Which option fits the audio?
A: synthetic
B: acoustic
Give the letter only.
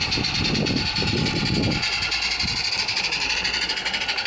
B